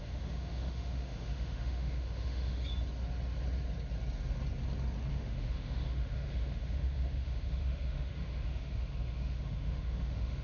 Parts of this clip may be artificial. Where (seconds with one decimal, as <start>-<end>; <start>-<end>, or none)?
0.0-2.6; 5.1-10.4